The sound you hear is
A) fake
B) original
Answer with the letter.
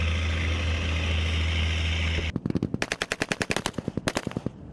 B